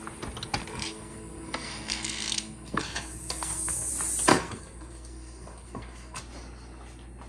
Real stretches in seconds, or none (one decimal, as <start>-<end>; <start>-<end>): 0.0-0.7; 3.9-4.3; 6.2-7.3